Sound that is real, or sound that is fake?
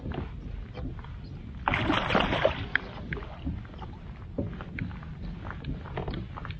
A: real